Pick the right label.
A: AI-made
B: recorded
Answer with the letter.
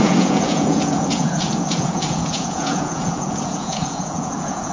A